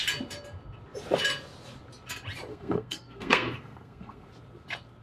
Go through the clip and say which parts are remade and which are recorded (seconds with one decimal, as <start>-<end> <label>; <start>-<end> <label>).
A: 0.0-2.5 recorded; 2.5-4.3 remade; 4.3-5.0 recorded

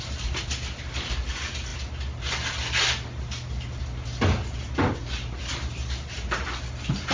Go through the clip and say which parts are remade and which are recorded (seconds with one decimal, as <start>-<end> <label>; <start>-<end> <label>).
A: 0.0-7.1 recorded

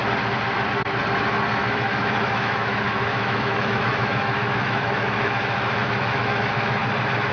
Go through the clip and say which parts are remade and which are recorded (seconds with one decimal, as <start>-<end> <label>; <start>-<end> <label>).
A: 0.0-1.5 recorded; 1.5-6.8 remade; 6.8-7.3 recorded

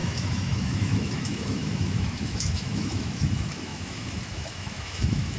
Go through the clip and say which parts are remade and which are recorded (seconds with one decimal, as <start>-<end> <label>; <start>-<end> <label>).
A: 0.0-5.4 remade

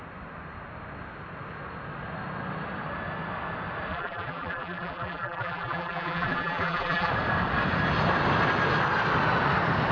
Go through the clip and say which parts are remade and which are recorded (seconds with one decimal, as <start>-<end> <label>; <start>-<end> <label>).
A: 0.0-3.9 recorded; 3.9-7.1 remade; 7.1-9.9 recorded

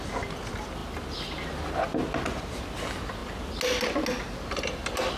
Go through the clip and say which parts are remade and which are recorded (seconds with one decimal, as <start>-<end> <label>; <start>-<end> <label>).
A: 0.0-5.2 recorded

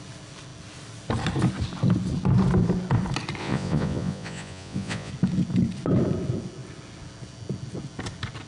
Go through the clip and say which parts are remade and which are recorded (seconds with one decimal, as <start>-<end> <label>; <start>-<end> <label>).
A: 0.0-3.4 recorded; 3.4-5.1 remade; 5.1-8.5 recorded